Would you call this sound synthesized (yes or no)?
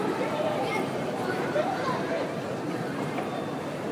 yes